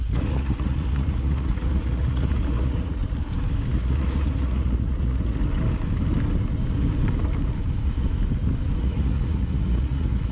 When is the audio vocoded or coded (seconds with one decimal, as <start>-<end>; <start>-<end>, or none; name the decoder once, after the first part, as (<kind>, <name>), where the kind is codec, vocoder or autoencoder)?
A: 0.0-3.0 (vocoder, Vocos); 3.7-5.4; 8.8-10.3